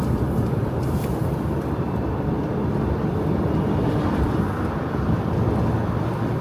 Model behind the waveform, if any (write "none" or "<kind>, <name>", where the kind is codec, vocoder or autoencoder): vocoder, BigVGAN v2